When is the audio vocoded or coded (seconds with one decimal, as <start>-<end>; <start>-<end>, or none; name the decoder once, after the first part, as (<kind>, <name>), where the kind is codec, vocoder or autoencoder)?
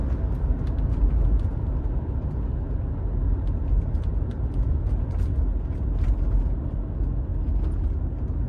none